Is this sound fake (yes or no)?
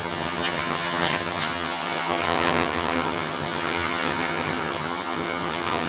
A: yes